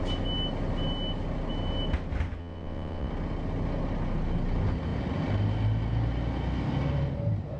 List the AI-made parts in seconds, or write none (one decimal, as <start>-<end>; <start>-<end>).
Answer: 2.4-3.1